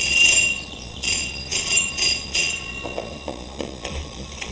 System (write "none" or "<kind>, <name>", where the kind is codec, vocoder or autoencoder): vocoder, Vocos